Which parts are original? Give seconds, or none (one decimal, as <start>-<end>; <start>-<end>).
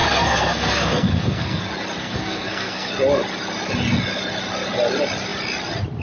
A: 1.6-2.0; 2.9-6.0